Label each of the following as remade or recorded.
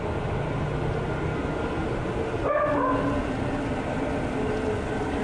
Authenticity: recorded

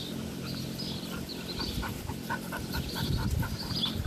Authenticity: recorded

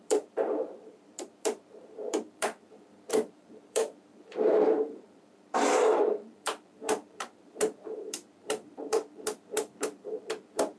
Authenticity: remade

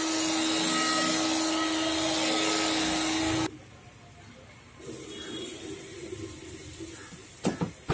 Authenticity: recorded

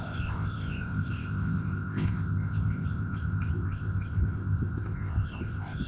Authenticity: remade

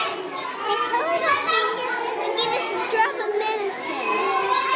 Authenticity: recorded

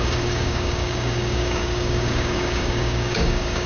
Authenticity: remade